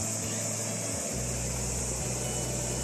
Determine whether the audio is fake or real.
real